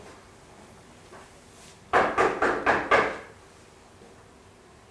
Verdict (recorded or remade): recorded